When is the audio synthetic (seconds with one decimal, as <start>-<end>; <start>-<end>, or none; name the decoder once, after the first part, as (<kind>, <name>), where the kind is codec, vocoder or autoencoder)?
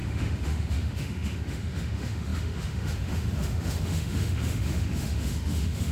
0.0-5.9 (autoencoder, DAC-VAE)